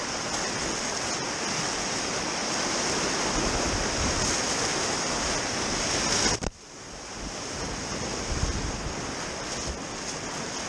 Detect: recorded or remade recorded